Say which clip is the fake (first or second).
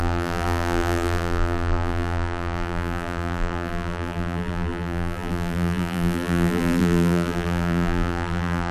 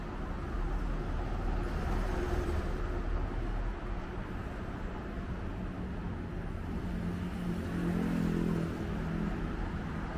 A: first